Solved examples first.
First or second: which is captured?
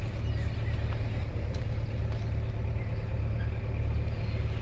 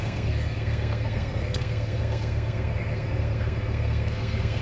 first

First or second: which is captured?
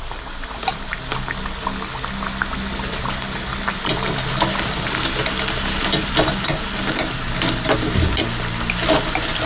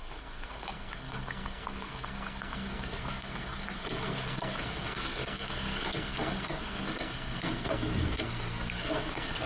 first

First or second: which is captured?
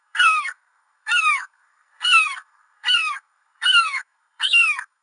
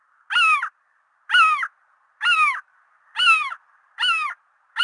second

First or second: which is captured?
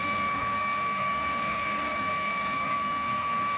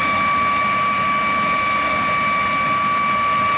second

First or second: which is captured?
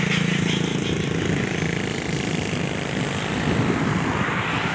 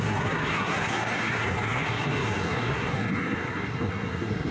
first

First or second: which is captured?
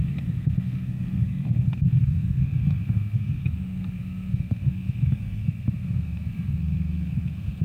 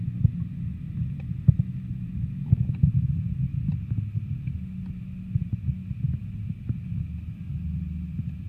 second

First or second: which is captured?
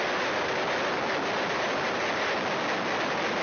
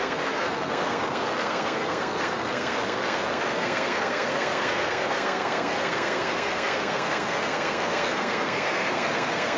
first